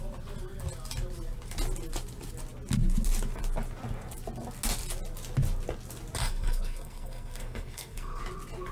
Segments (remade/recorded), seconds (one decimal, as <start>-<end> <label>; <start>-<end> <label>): 0.0-6.2 recorded; 6.2-8.2 remade; 8.2-8.7 recorded